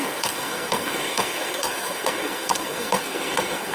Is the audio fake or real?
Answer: fake